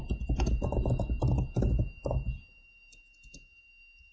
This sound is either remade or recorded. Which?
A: recorded